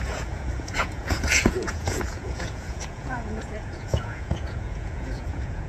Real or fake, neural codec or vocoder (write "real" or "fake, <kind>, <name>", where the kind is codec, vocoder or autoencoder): fake, vocoder, Vocos